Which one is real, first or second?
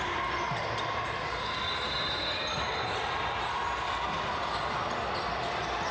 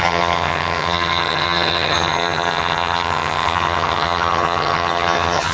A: first